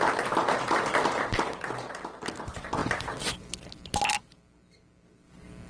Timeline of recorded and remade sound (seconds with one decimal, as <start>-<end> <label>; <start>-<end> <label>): 0.0-5.7 recorded